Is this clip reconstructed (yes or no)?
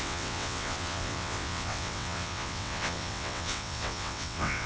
yes